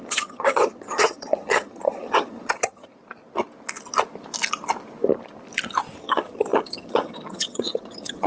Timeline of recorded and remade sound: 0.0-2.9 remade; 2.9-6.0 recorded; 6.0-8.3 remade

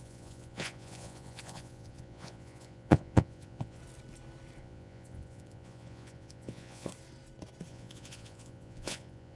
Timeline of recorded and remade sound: 0.0-3.8 remade; 3.8-4.6 recorded; 4.6-6.9 remade; 6.9-7.7 recorded; 7.7-9.3 remade

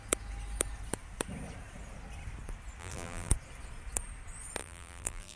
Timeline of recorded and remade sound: 0.0-2.8 recorded; 2.8-3.3 remade; 3.3-4.6 recorded; 4.6-5.4 remade

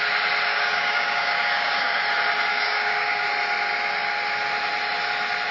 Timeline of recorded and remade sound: 0.0-0.5 recorded; 0.5-2.0 remade; 2.0-2.5 recorded; 2.5-3.3 remade; 3.3-5.5 recorded

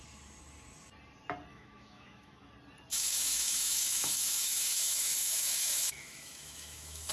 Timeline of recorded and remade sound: 0.0-1.5 recorded; 1.5-2.5 remade; 2.5-2.9 recorded; 2.9-7.1 remade